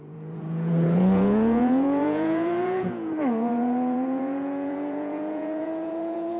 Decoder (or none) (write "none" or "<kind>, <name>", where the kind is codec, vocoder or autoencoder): vocoder, Vocos